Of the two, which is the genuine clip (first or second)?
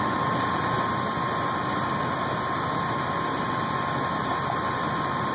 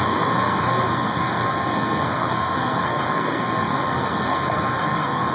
first